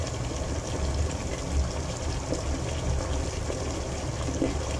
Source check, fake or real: real